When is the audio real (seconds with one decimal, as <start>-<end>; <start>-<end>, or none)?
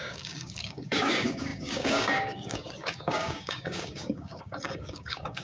none